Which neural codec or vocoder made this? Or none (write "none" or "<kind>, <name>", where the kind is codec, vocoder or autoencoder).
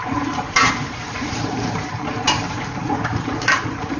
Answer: vocoder, BigVGAN v2